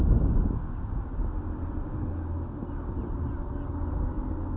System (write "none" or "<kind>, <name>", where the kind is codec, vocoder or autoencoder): none